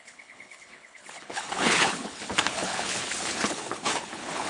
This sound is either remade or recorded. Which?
remade